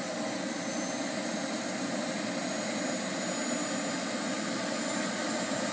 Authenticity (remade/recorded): recorded